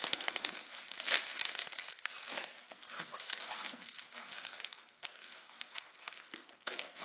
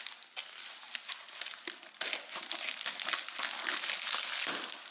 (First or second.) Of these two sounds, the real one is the second